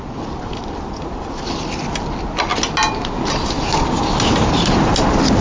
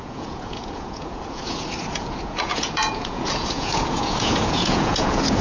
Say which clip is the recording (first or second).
first